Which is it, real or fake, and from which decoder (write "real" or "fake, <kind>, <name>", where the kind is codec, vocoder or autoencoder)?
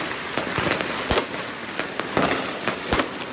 real